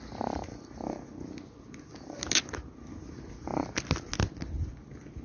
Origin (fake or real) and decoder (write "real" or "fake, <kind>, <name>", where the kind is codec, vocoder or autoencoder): real